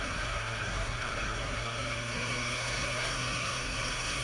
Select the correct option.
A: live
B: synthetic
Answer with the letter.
B